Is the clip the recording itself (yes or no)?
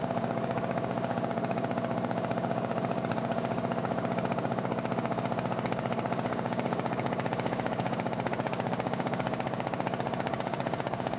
no